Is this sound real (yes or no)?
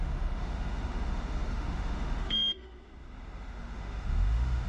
no